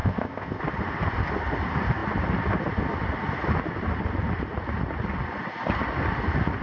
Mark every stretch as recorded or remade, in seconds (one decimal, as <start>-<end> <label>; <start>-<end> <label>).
0.0-0.6 remade; 0.6-6.6 recorded